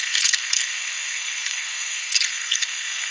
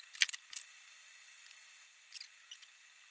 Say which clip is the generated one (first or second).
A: first